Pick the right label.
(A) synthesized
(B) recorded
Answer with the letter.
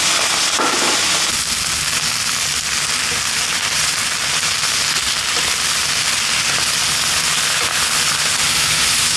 B